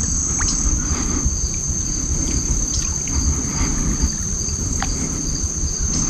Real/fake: real